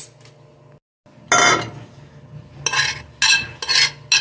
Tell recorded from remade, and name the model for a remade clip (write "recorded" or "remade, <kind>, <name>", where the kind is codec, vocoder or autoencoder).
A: recorded